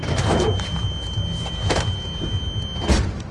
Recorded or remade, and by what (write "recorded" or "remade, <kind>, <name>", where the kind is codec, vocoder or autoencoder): recorded